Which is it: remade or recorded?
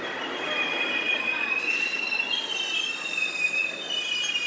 recorded